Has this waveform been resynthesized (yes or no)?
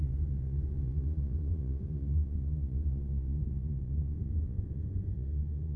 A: yes